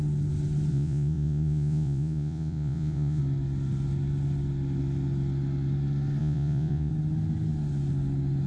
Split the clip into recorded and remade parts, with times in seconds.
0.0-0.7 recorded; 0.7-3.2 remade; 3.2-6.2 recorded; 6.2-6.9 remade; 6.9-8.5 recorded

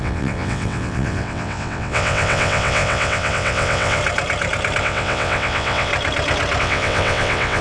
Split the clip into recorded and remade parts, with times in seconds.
0.0-4.0 remade; 4.0-4.8 recorded; 4.8-5.9 remade; 5.9-6.6 recorded; 6.6-7.6 remade

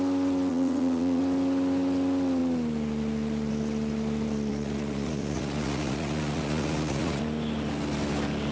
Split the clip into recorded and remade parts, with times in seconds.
0.0-0.5 recorded; 0.5-1.2 remade; 1.2-4.5 recorded; 4.5-7.2 remade; 7.2-8.5 recorded

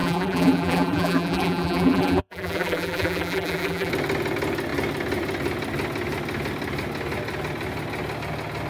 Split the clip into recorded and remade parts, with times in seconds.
0.0-3.9 remade; 3.9-8.7 recorded

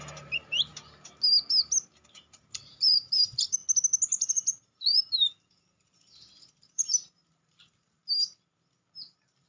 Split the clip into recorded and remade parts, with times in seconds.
0.0-0.7 remade; 0.7-2.1 recorded; 2.1-3.6 remade; 3.6-4.3 recorded; 4.3-8.0 remade; 8.0-9.5 recorded

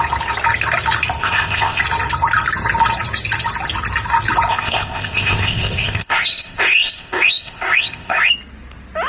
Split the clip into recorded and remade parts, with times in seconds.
0.0-1.2 recorded; 1.2-1.8 remade; 1.8-4.5 recorded; 4.5-8.3 remade; 8.3-9.1 recorded